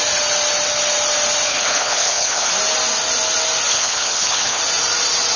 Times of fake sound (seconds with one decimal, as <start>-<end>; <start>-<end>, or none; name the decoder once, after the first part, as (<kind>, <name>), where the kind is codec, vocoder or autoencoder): 1.5-2.5 (codec, HILCodec); 3.7-4.6